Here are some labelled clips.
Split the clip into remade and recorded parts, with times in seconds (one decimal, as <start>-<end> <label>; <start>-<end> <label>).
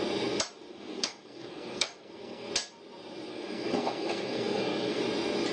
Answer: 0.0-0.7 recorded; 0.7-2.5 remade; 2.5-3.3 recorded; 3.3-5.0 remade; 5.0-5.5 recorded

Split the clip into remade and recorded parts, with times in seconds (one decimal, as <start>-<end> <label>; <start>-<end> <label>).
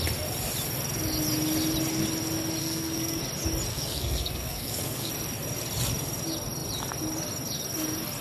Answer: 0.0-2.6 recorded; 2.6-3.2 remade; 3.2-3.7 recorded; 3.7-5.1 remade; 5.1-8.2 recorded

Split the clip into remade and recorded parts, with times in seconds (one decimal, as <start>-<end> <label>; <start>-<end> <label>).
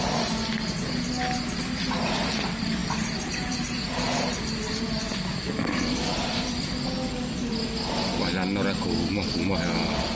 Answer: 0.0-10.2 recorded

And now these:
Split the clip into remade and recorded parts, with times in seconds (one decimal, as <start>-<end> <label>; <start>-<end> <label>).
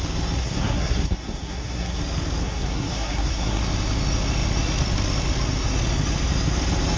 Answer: 0.0-0.4 recorded; 0.4-2.0 remade; 2.0-2.4 recorded; 2.4-3.6 remade; 3.6-7.0 recorded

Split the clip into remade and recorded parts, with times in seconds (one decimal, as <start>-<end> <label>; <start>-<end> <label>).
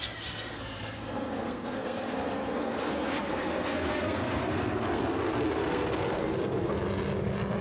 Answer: 0.0-6.7 remade; 6.7-7.6 recorded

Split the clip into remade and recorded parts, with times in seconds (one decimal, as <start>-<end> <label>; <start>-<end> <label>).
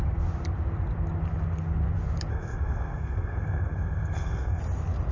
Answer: 0.0-2.3 recorded; 2.3-4.6 remade; 4.6-5.1 recorded